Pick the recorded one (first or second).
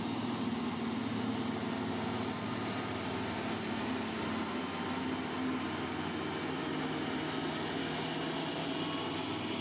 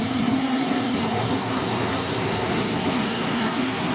first